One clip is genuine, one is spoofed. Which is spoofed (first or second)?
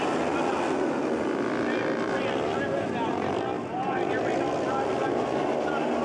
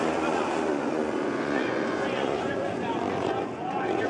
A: second